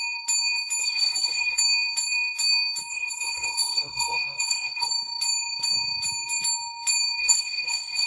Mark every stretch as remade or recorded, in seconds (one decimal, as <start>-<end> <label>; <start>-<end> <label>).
0.0-0.8 recorded; 0.8-1.6 remade; 1.6-2.9 recorded; 2.9-4.9 remade; 4.9-7.2 recorded; 7.2-8.1 remade